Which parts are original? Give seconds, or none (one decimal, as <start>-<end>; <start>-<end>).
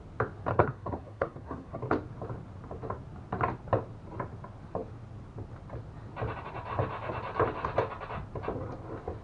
0.0-0.5; 1.8-9.2